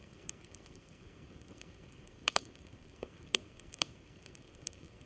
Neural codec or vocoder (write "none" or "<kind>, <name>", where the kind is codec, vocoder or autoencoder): codec, SNAC